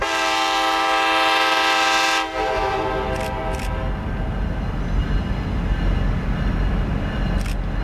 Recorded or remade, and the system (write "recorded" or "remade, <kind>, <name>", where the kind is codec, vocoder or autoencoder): recorded